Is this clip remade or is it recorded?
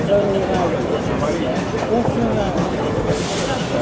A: remade